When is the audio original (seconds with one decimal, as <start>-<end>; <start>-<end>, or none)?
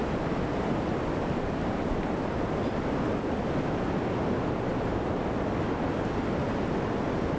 0.0-7.4